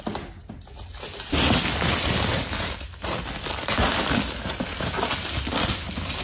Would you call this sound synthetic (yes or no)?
no